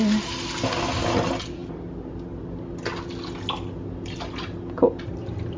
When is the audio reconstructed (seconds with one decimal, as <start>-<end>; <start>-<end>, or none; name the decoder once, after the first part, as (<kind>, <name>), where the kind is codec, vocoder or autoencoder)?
none

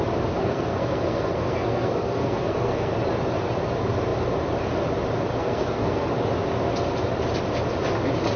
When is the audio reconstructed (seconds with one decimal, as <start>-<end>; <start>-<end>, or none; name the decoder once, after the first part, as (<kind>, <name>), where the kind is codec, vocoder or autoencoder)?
0.4-2.9 (codec, SNAC); 5.4-6.1

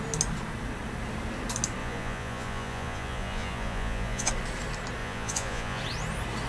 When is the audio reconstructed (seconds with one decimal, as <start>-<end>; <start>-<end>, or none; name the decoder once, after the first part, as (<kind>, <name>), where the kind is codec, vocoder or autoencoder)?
1.8-4.3 (vocoder, Vocos); 5.0-5.8